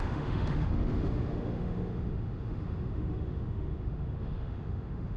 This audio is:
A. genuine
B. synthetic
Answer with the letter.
B